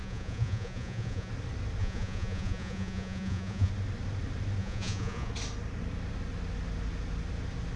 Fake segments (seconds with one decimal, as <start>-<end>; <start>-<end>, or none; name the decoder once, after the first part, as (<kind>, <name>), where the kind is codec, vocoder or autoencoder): 0.0-1.3 (vocoder, Vocos); 1.8-3.7; 4.6-5.3